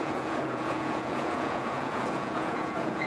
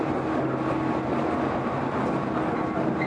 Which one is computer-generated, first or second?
first